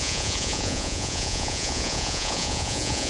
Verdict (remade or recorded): remade